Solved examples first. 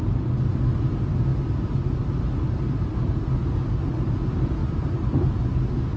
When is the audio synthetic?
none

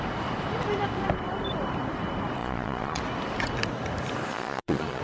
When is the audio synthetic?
2.4-3.0 (vocoder, Vocos); 4.3-5.0